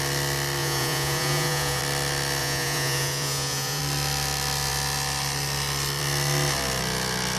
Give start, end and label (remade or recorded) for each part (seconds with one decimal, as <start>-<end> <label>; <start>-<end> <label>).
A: 0.0-0.6 recorded; 0.6-1.8 remade; 1.8-2.4 recorded; 2.4-3.8 remade; 3.8-7.4 recorded